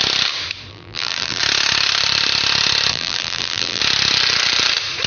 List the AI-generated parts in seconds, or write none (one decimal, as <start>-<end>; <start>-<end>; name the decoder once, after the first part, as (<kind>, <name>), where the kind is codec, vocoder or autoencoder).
0.7-1.4 (vocoder, BigVGAN v2); 2.9-3.8